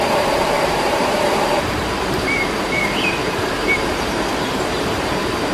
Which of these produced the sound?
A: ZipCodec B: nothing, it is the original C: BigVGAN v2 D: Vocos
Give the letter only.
C